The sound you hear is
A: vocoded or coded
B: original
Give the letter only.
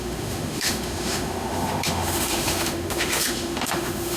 A